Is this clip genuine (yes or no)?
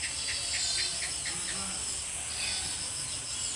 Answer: yes